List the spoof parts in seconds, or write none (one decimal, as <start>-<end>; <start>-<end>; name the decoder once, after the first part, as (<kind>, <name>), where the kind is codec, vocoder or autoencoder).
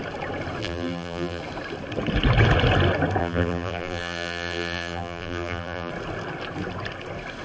0.6-1.4 (vocoder, BigVGAN v2); 3.2-5.9